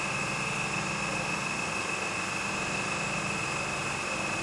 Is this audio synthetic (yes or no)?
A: no